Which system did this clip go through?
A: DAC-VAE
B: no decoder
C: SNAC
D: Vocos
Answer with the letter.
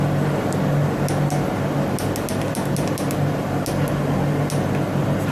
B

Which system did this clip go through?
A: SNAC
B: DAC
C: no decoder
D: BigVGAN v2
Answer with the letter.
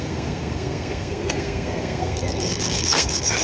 A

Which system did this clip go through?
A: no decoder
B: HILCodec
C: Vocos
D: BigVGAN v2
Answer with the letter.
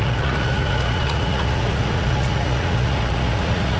C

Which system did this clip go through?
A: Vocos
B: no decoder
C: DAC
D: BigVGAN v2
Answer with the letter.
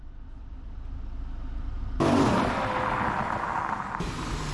B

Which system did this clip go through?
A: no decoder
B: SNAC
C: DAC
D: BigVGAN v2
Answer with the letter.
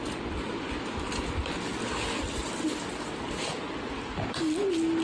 A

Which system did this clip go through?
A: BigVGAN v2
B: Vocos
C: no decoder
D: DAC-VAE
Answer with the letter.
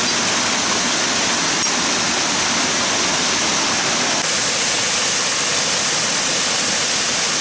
C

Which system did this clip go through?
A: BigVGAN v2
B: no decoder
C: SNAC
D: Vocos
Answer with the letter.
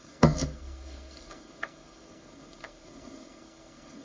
C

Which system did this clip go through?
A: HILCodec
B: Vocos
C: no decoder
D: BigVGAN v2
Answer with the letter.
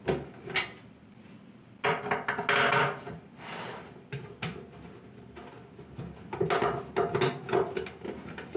C